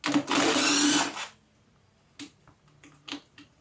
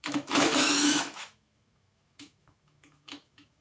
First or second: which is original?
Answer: first